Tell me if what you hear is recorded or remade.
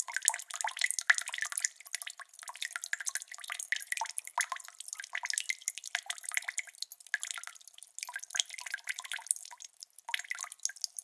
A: recorded